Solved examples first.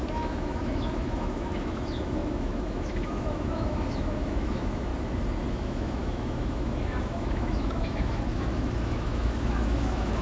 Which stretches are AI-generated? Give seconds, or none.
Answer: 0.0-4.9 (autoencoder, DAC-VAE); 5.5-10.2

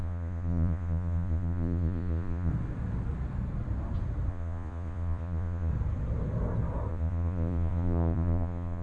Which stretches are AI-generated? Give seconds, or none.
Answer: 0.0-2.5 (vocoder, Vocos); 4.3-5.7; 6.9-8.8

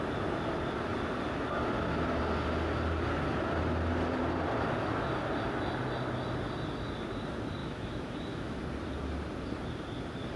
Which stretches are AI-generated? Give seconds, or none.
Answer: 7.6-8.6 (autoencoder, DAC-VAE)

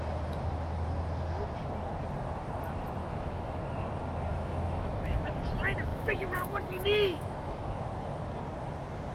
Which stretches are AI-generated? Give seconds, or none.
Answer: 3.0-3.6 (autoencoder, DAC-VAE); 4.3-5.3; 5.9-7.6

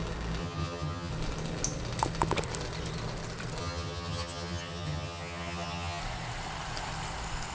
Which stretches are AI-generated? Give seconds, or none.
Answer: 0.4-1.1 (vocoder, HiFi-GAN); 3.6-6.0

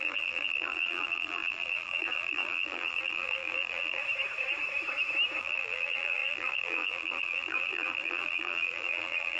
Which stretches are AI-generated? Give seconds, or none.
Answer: 0.0-4.0 (vocoder, BigVGAN v2); 5.4-9.4

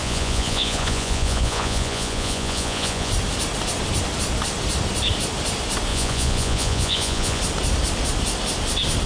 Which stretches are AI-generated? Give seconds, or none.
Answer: 0.0-3.1 (vocoder, Vocos); 5.9-7.4

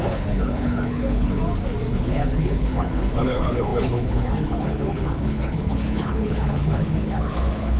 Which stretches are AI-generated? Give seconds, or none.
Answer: 0.0-1.4 (codec, HILCodec); 1.9-7.8